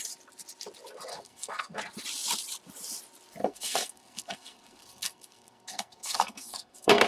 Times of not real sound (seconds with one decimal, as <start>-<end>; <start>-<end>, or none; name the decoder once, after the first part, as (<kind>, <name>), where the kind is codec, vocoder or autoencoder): 1.1-1.8 (codec, SNAC); 3.4-7.1